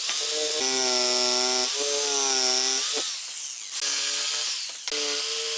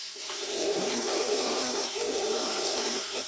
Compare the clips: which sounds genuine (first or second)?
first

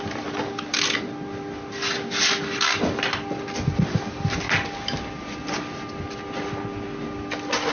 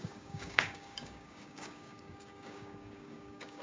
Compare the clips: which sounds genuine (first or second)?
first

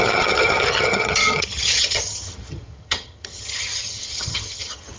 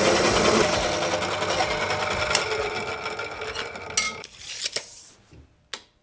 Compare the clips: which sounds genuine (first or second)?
second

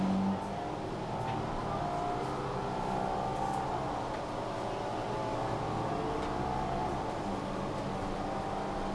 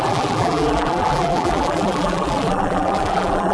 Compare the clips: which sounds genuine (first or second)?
first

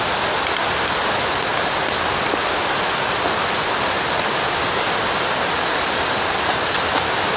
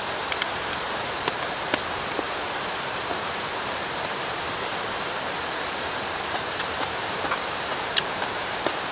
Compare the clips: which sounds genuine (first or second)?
first